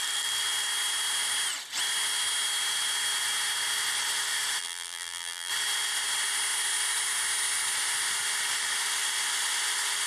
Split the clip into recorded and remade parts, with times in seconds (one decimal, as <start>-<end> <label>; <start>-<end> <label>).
0.0-4.6 recorded; 4.6-5.5 remade; 5.5-10.1 recorded